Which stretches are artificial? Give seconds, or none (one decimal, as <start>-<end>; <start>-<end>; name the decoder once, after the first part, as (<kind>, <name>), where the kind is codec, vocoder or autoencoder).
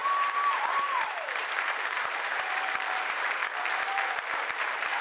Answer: 0.0-3.4 (vocoder, BigVGAN v2); 4.3-5.0